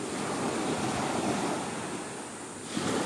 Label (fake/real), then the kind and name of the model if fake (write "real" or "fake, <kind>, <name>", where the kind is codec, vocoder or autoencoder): real